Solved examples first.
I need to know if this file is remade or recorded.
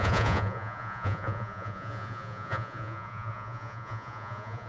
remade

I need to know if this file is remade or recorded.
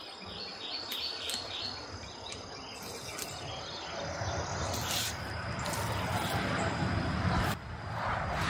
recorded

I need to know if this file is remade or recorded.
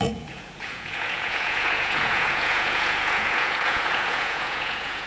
remade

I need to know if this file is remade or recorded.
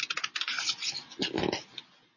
recorded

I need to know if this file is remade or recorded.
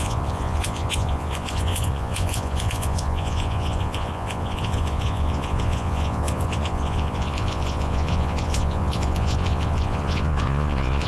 remade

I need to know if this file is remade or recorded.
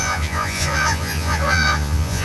remade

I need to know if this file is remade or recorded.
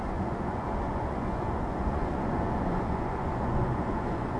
remade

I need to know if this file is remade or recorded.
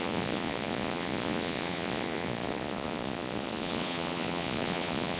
remade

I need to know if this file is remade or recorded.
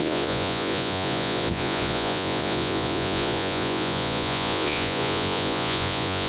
remade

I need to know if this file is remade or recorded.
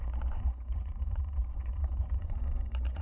remade